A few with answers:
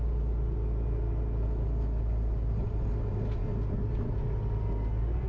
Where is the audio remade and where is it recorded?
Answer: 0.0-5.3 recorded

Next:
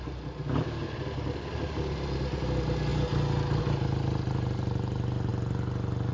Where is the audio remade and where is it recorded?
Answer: 0.0-6.1 recorded